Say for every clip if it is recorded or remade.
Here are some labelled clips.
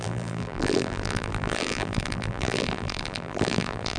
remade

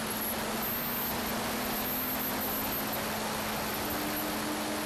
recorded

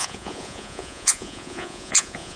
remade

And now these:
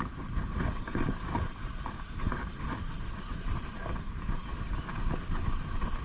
remade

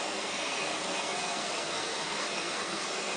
remade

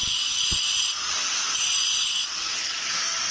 recorded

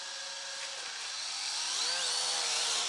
recorded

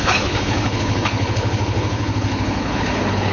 remade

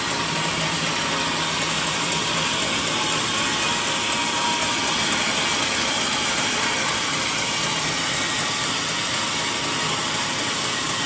recorded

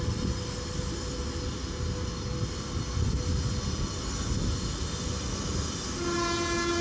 recorded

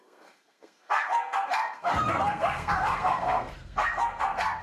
remade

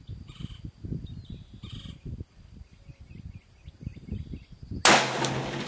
recorded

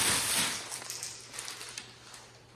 recorded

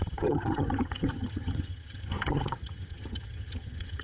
remade